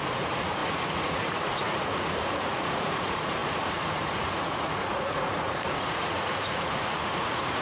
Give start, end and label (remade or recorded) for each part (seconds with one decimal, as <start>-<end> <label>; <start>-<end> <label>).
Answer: 0.0-7.6 remade